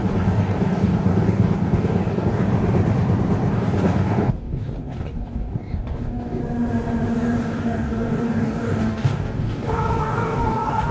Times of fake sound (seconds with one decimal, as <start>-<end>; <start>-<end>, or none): 0.0-2.5; 3.5-6.4; 7.1-10.9